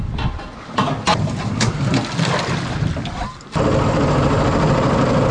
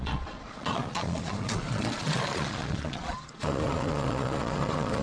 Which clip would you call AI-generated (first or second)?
second